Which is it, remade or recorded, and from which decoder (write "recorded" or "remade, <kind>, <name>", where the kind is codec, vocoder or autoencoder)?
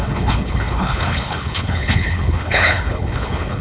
remade, codec, HILCodec